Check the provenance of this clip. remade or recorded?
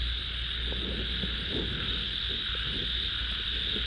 recorded